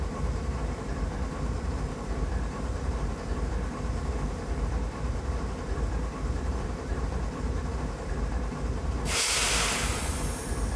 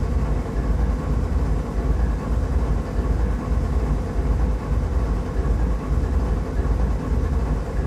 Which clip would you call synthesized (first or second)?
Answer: first